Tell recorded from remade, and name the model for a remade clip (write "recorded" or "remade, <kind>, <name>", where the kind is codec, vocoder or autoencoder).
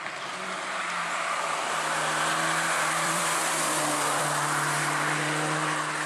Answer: remade, vocoder, BigVGAN v2